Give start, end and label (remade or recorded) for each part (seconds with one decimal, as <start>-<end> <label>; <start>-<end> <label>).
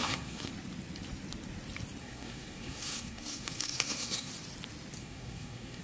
0.0-0.5 remade; 0.5-2.0 recorded; 2.0-4.3 remade; 4.3-5.0 recorded; 5.0-5.8 remade